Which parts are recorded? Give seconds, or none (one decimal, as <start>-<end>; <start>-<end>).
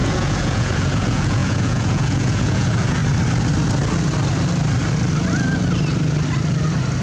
3.0-7.0